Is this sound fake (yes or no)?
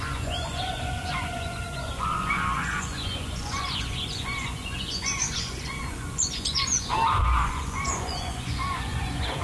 yes